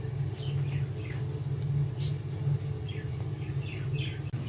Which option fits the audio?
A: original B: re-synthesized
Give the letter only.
A